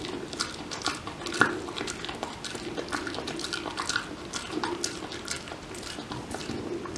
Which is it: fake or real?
real